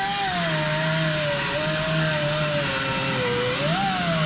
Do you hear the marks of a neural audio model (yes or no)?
no